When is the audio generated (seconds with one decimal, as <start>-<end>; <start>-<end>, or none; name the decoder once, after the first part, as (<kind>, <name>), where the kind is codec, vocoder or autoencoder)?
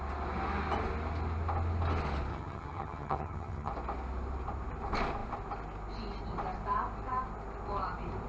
2.3-3.7 (vocoder, HiFi-GAN)